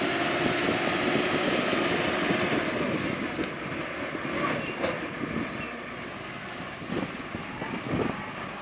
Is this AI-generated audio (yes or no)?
no